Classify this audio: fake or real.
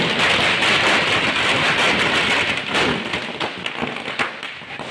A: real